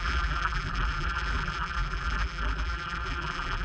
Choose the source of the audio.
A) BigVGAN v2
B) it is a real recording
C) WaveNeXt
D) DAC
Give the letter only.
A